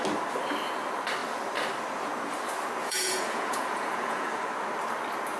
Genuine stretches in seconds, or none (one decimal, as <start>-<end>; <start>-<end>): 0.0-2.8; 4.3-5.4